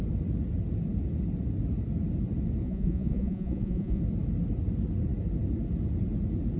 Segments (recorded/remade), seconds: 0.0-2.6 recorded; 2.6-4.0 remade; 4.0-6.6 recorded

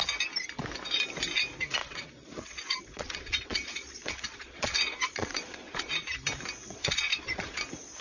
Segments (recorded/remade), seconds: 0.0-1.8 recorded; 1.8-5.9 remade; 5.9-6.6 recorded; 6.6-7.6 remade; 7.6-8.0 recorded

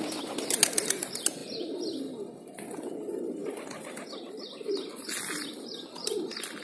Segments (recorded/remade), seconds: 0.0-6.6 recorded

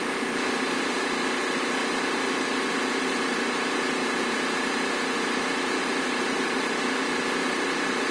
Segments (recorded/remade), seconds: 0.0-1.8 remade; 1.8-3.3 recorded; 3.3-8.1 remade